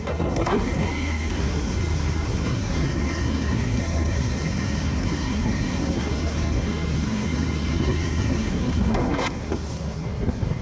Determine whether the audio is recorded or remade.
remade